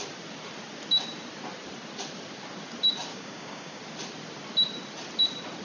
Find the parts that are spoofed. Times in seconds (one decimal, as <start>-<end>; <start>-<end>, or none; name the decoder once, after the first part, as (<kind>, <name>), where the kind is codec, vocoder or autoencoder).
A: 3.1-3.8 (codec, DAC)